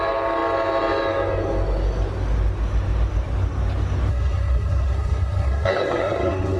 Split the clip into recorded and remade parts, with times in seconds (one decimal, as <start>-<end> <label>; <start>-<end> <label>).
0.0-4.1 recorded; 4.1-6.6 remade

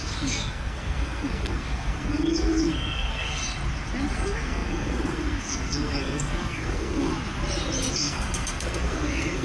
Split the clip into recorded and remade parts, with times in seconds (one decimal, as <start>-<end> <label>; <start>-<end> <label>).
0.0-3.4 remade; 3.4-4.1 recorded; 4.1-7.1 remade; 7.1-7.9 recorded; 7.9-9.4 remade

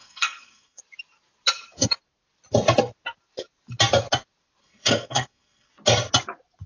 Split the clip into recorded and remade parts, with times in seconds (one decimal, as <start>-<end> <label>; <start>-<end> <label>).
0.0-0.8 remade; 0.8-4.6 recorded; 4.6-5.7 remade; 5.7-6.7 recorded

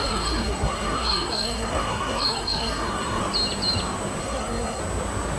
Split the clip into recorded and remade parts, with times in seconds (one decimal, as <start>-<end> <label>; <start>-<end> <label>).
0.0-3.2 remade; 3.2-4.2 recorded; 4.2-4.8 remade; 4.8-5.4 recorded

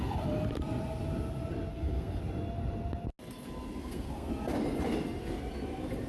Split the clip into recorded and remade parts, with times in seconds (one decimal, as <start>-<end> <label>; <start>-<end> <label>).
0.0-1.7 recorded; 1.7-2.2 remade; 2.2-3.8 recorded; 3.8-4.3 remade; 4.3-6.1 recorded